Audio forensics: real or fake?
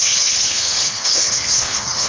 fake